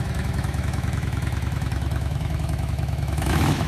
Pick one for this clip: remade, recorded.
remade